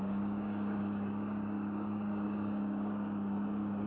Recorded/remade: remade